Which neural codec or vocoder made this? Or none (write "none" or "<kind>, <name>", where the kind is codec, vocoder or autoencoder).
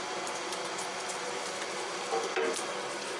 none